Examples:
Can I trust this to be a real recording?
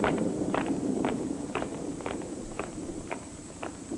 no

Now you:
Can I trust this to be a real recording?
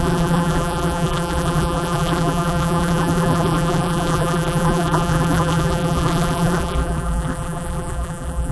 no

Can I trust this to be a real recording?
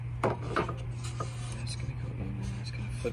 yes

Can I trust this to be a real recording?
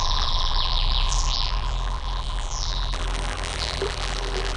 no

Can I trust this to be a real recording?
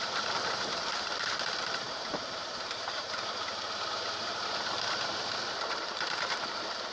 no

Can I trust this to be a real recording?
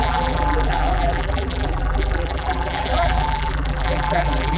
no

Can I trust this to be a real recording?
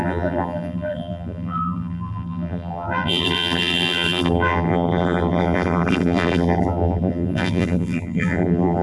no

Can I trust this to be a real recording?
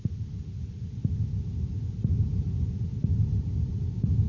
yes